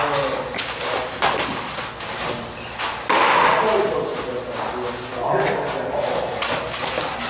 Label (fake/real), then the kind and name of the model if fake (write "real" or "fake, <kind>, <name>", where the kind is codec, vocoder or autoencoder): real